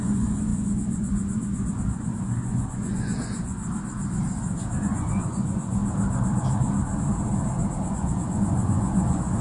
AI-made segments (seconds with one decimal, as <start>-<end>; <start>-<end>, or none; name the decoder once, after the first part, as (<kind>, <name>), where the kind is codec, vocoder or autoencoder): 0.0-3.6 (vocoder, Vocos); 4.8-5.8; 7.9-9.4